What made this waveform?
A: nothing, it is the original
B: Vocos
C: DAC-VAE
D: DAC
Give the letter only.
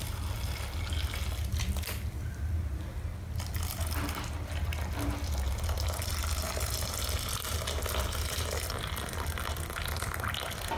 A